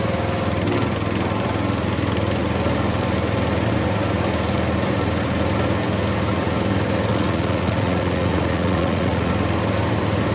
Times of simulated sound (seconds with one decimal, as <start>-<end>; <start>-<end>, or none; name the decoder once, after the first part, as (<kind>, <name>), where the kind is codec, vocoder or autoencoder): 7.1-9.3 (vocoder, Vocos)